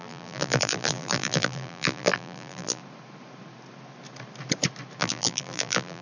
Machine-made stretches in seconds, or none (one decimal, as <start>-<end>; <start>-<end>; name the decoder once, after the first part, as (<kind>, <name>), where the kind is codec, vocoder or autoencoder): 0.0-2.8 (vocoder, BigVGAN v2); 5.0-6.0